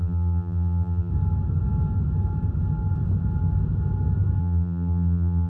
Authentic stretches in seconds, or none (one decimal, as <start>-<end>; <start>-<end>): 1.1-4.4